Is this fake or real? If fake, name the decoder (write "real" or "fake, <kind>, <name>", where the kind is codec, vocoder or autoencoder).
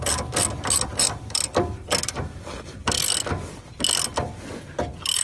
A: real